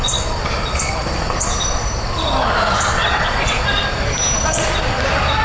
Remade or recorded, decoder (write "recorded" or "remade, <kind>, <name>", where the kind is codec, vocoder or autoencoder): recorded